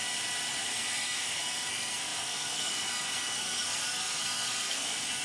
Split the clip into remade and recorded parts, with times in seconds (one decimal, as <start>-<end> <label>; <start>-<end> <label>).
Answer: 0.0-0.6 recorded; 0.6-5.2 remade